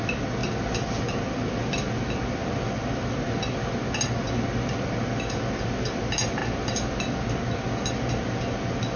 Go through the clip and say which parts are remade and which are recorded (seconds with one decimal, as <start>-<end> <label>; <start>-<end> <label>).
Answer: 0.0-9.0 recorded